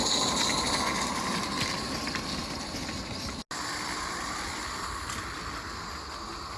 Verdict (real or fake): real